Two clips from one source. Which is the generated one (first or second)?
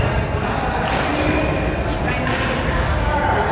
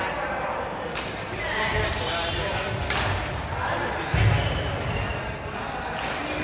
first